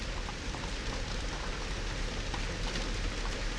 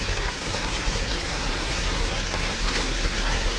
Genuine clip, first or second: first